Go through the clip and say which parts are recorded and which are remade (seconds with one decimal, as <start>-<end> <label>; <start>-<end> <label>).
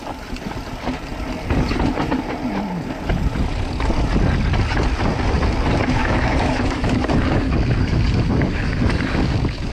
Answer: 0.0-6.0 recorded; 6.0-9.7 remade